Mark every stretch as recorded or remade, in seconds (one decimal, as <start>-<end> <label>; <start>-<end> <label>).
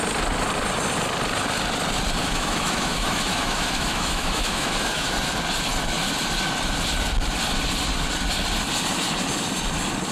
0.0-2.2 recorded; 2.2-5.1 remade; 5.1-10.1 recorded